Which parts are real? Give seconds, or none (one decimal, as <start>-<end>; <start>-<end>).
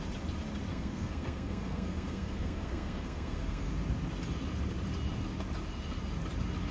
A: 0.0-0.7; 3.7-6.7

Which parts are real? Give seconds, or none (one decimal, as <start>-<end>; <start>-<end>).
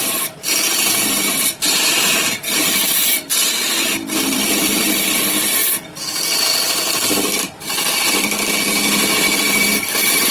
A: 5.6-9.4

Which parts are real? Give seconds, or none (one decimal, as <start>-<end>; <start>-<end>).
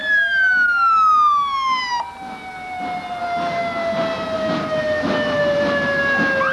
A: 0.0-6.5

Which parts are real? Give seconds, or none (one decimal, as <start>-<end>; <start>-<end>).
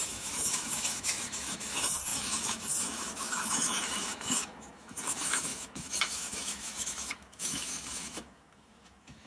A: none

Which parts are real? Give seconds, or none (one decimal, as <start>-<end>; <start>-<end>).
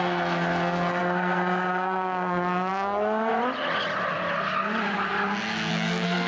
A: 3.3-5.7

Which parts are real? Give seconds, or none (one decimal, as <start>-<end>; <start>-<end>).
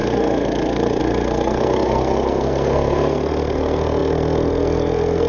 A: none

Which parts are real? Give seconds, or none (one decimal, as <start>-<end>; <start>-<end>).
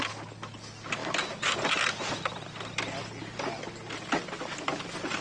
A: 0.0-5.2